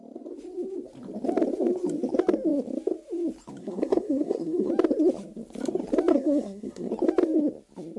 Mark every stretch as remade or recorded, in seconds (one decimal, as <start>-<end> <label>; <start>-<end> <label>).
0.0-3.6 recorded; 3.6-4.7 remade; 4.7-6.1 recorded; 6.1-6.9 remade; 6.9-8.0 recorded